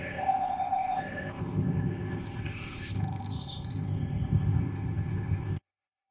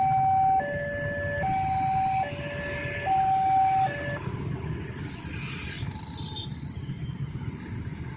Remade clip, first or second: first